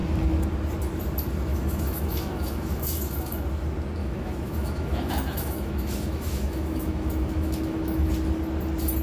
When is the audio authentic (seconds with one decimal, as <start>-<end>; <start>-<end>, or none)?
0.0-1.5; 3.4-4.0; 8.1-9.0